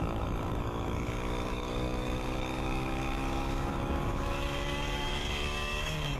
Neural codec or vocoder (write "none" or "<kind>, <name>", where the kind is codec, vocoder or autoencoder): codec, DAC